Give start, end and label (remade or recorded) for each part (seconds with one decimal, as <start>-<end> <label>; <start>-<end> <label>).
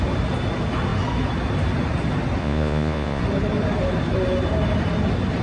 0.0-2.4 recorded; 2.4-3.2 remade; 3.2-5.4 recorded